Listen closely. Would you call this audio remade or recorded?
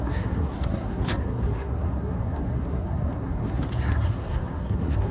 remade